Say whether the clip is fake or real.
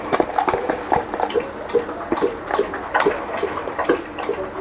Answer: real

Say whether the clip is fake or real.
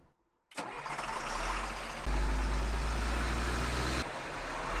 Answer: real